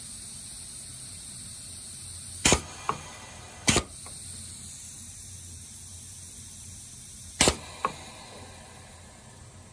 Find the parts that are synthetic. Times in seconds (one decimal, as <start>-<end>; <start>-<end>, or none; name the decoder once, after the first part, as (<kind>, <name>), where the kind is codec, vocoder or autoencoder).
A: none